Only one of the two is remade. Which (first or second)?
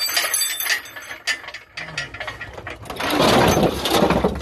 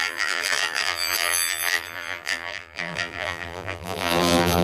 second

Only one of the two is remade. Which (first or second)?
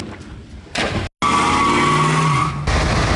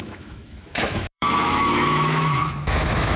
second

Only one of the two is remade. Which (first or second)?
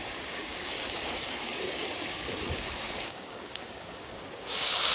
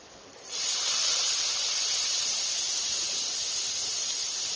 first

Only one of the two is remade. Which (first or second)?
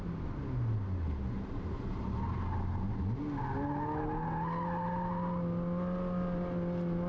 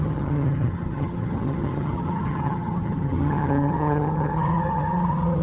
second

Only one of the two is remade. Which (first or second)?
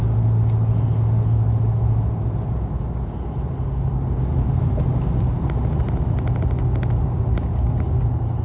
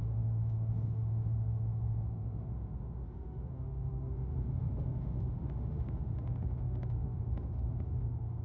second